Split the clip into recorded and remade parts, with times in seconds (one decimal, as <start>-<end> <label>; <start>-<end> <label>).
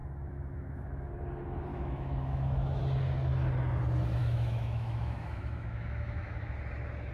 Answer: 0.0-1.1 remade; 1.1-1.7 recorded; 1.7-2.8 remade; 2.8-4.2 recorded; 4.2-6.4 remade; 6.4-7.1 recorded